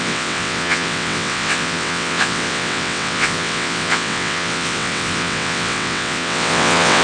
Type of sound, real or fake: fake